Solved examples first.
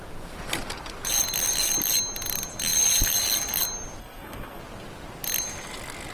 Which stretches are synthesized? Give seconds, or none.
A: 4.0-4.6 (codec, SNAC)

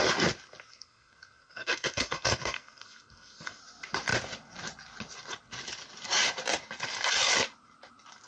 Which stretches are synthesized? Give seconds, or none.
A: 0.7-3.6 (codec, SNAC)

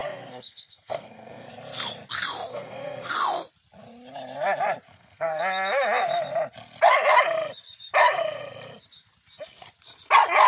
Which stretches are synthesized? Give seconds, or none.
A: 0.0-1.5 (codec, SNAC); 2.5-3.1; 4.9-5.4

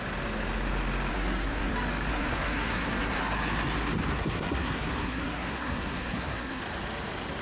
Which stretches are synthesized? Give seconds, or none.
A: 1.1-1.7 (codec, SNAC); 2.1-3.2; 4.1-6.6

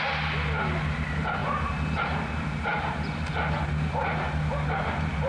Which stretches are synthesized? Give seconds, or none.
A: none

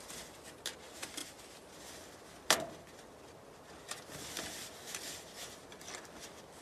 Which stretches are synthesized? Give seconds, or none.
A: none

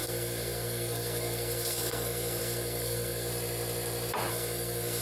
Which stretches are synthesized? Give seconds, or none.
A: 0.0-3.3 (codec, SNAC); 4.3-5.0